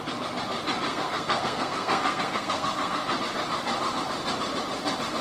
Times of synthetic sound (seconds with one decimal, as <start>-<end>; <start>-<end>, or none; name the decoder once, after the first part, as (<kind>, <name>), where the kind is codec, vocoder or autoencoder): 0.9-3.2 (codec, SNAC)